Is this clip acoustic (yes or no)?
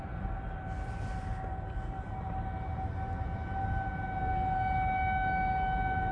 yes